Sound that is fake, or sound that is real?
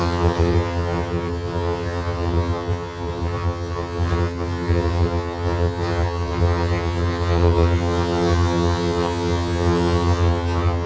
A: fake